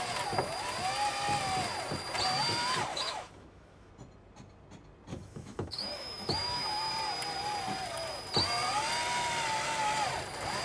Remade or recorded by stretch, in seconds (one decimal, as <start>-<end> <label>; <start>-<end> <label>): 0.0-2.9 recorded; 2.9-3.9 remade; 3.9-5.1 recorded; 5.1-6.9 remade; 6.9-10.6 recorded